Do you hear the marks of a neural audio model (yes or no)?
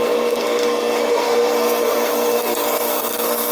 yes